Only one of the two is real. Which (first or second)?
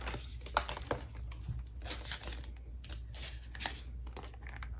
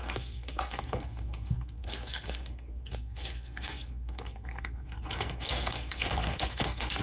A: first